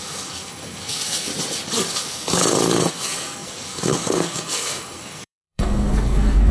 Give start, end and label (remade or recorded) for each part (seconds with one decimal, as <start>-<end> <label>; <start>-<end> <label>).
0.0-1.3 remade; 1.3-1.9 recorded; 1.9-2.4 remade; 2.4-2.9 recorded; 2.9-6.5 remade

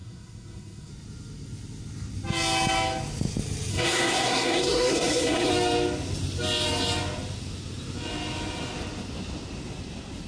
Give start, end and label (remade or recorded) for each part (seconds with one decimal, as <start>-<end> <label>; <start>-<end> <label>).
0.0-0.9 remade; 0.9-3.7 recorded; 3.7-5.5 remade; 5.5-10.3 recorded

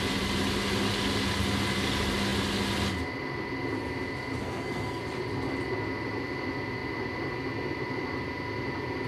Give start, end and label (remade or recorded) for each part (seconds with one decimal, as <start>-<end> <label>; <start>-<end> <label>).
0.0-4.4 recorded; 4.4-5.0 remade; 5.0-9.1 recorded